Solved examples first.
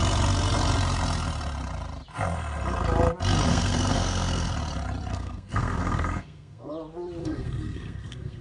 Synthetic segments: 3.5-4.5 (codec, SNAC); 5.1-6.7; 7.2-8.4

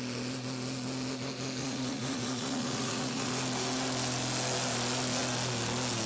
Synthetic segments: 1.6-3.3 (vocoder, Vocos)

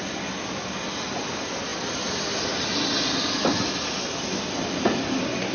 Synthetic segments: none

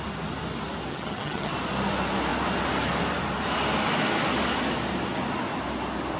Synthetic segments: 0.9-1.5 (vocoder, HiFi-GAN)

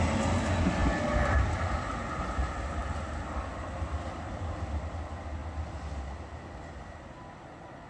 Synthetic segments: 0.8-2.0 (vocoder, BigVGAN v2)

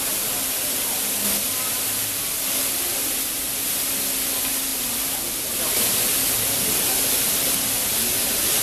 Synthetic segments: none

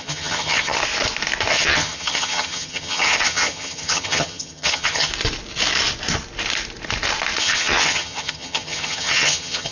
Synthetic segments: 0.0-0.8 (vocoder, HiFi-GAN); 1.5-5.1; 7.4-9.7

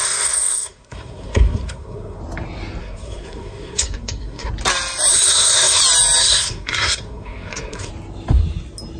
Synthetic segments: 0.0-2.2 (codec, SNAC); 2.8-4.5; 5.1-5.8; 6.2-7.9